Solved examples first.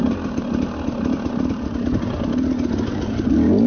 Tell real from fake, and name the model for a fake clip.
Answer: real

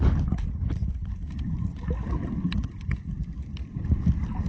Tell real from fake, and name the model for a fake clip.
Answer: real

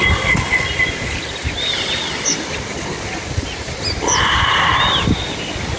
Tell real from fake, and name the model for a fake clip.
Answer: real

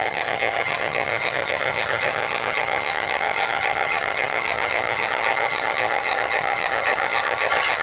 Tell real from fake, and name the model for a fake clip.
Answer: fake, vocoder, HiFi-GAN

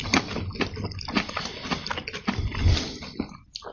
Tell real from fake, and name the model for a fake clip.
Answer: real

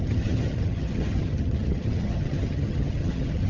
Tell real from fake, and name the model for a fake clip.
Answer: fake, vocoder, HiFi-GAN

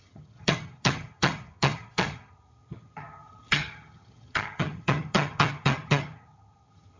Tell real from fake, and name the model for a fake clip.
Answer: fake, vocoder, HiFi-GAN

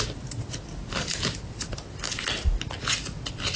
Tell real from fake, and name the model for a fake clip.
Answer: real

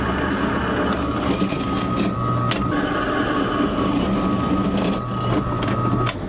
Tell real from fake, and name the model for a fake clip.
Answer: real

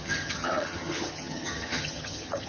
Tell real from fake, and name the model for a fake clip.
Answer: fake, vocoder, HiFi-GAN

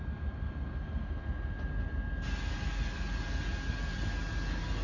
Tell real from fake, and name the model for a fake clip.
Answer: real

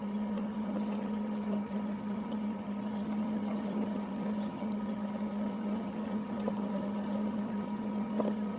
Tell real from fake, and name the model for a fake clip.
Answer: fake, vocoder, HiFi-GAN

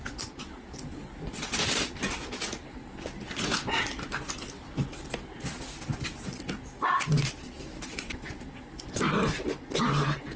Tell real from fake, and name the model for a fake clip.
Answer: real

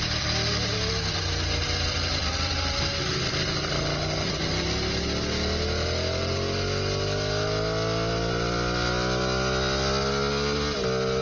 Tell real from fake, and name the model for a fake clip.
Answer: real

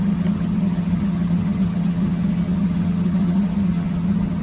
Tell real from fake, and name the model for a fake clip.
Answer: fake, vocoder, HiFi-GAN